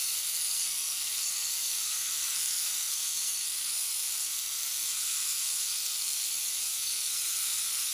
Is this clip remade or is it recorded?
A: remade